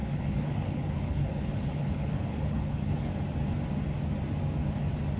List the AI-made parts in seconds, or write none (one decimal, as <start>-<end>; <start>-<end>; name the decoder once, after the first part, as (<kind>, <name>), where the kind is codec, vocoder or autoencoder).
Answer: 0.0-3.1 (codec, HILCodec)